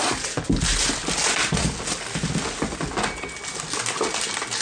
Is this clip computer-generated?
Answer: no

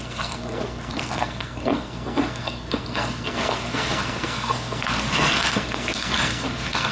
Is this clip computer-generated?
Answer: yes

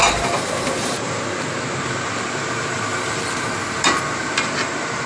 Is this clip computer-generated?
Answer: yes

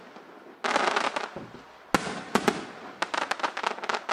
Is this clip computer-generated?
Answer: no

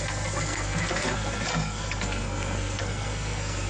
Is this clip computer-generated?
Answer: yes